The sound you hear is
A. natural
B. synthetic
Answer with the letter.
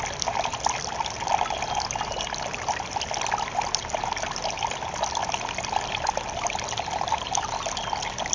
A